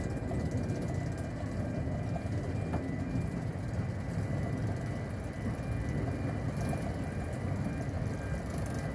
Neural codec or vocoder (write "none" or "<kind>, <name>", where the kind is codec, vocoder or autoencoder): none